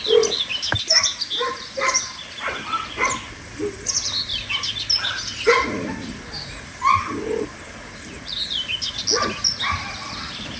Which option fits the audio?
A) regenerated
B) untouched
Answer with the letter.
B